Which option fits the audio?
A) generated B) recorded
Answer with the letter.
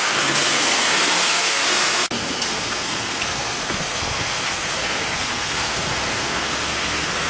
A